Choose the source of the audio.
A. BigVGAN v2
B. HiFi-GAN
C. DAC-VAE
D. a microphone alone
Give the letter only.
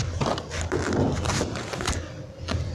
A